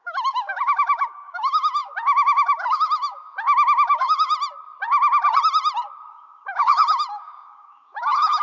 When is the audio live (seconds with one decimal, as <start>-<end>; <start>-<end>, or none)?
4.3-6.1